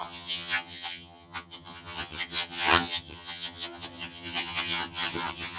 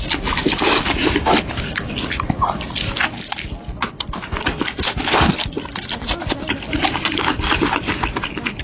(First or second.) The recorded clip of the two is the second